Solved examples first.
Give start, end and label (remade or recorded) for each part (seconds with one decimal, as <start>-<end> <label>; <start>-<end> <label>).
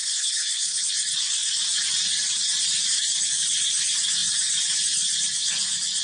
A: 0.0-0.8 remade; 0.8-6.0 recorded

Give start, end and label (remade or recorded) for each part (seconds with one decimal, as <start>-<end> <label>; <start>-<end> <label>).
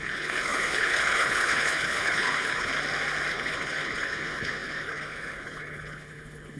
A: 0.0-2.7 remade; 2.7-3.3 recorded; 3.3-6.6 remade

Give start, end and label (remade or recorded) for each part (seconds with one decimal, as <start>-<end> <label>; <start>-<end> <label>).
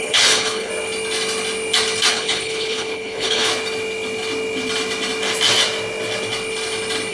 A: 0.0-0.7 remade; 0.7-2.1 recorded; 2.1-3.5 remade; 3.5-7.1 recorded